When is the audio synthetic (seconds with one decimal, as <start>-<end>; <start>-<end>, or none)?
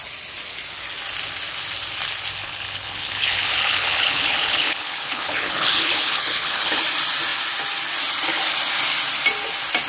2.4-6.8